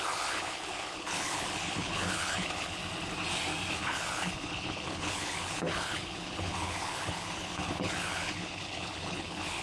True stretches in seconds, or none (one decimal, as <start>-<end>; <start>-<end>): 2.8-3.7